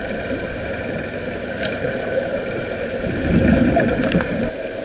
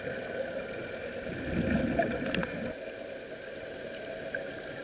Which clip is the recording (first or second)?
second